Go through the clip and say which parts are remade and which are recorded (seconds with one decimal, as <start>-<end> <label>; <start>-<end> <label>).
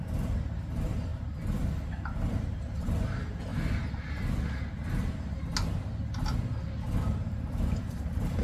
0.0-1.1 remade; 1.1-2.3 recorded; 2.3-3.5 remade; 3.5-7.2 recorded; 7.2-8.4 remade